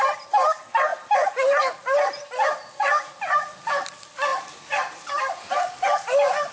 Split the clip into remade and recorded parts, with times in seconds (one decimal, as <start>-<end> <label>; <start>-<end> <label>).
0.0-6.5 recorded